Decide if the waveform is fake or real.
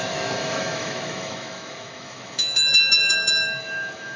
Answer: fake